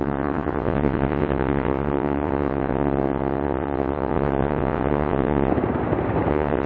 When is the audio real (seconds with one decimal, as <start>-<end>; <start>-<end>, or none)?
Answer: 5.5-6.3